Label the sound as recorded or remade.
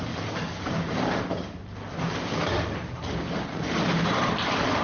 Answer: recorded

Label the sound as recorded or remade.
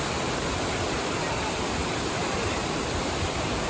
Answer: remade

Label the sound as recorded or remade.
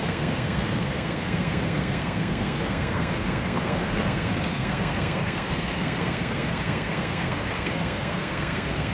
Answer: remade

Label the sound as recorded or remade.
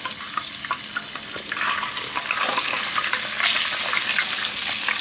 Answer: recorded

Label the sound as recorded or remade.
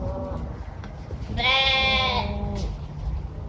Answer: recorded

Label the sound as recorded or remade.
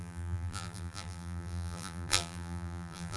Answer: remade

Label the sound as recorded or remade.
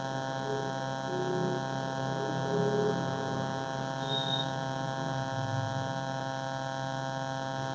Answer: recorded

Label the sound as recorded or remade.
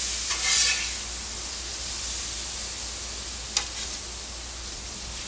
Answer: recorded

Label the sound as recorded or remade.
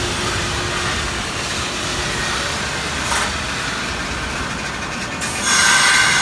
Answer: recorded